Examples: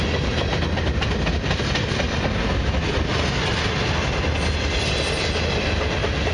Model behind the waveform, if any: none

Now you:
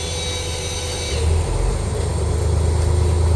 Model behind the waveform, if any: none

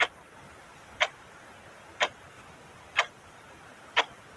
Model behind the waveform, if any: none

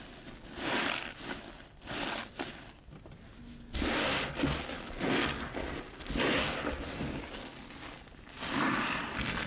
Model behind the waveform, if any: none